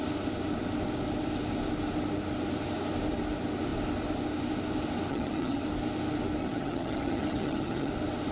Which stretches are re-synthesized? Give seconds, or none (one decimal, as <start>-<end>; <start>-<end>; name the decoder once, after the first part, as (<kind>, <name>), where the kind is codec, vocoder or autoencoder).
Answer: 5.1-5.6 (vocoder, HiFi-GAN); 6.4-7.9

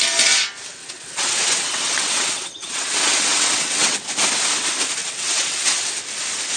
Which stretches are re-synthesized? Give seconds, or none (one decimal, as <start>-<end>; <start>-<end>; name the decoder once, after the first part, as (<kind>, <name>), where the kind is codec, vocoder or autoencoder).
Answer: 0.8-4.0 (vocoder, WaveNeXt); 5.0-6.0